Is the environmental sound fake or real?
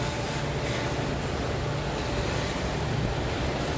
real